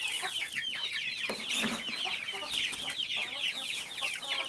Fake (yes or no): no